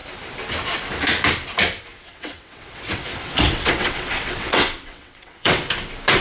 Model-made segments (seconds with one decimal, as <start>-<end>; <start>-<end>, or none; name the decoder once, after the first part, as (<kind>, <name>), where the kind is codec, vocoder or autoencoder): 1.9-5.6 (vocoder, WaveNeXt)